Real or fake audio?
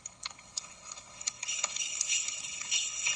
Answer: fake